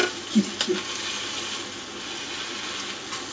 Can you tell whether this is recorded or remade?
recorded